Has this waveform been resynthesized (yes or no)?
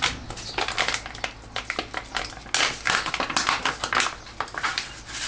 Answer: no